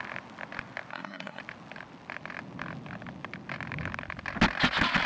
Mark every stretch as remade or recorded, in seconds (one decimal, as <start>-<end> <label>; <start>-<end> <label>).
0.0-0.9 recorded; 0.9-1.4 remade; 1.4-5.1 recorded